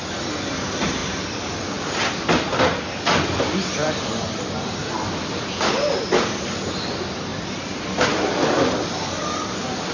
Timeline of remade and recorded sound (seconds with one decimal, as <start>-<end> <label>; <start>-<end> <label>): 0.0-9.9 recorded